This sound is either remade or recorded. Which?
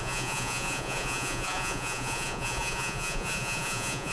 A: remade